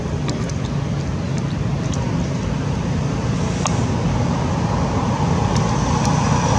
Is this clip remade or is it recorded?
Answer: recorded